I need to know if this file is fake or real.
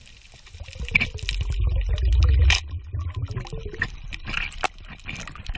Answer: real